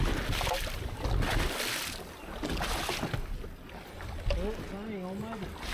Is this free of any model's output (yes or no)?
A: yes